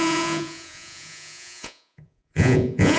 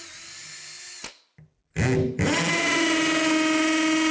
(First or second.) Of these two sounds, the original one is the second